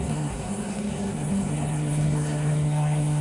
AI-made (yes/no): yes